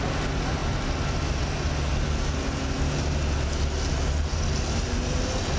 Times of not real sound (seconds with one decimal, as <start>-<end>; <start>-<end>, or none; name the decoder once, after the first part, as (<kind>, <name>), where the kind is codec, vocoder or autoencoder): none